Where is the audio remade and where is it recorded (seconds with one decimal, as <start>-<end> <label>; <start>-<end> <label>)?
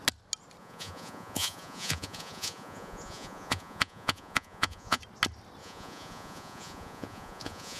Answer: 0.0-0.6 recorded; 0.6-5.0 remade; 5.0-5.6 recorded; 5.6-7.8 remade